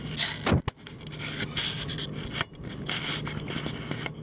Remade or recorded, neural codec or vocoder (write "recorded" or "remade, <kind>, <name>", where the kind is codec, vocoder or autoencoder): recorded